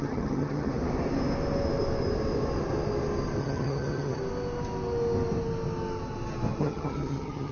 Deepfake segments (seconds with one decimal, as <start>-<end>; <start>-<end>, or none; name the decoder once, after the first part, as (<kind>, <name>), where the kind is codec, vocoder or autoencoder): 0.0-0.7 (vocoder, HiFi-GAN); 3.4-4.2; 6.6-7.5